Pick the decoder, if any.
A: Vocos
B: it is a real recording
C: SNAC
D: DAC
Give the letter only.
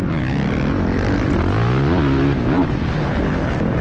B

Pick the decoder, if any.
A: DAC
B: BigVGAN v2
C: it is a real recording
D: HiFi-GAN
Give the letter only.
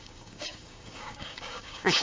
A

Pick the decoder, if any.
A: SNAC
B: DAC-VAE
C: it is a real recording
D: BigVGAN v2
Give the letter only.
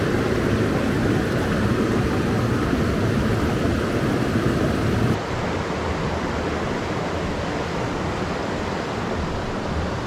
C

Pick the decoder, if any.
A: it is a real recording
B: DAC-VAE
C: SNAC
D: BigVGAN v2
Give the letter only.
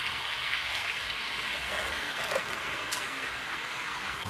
C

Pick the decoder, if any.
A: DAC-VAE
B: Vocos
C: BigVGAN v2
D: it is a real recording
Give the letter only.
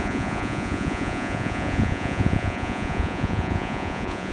B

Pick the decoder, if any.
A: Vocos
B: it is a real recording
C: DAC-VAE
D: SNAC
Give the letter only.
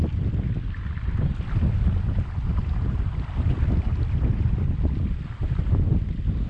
B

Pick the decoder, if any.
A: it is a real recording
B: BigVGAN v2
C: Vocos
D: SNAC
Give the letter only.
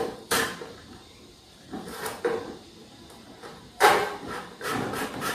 B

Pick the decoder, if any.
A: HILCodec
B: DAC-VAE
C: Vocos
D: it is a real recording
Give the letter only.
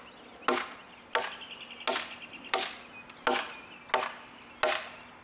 D